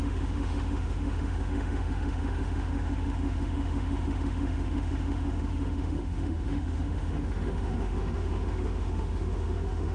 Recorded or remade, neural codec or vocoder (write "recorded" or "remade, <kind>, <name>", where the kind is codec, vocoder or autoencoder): remade, autoencoder, DAC-VAE